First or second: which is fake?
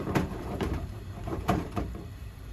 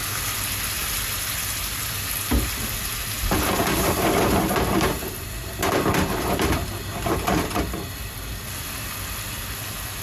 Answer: first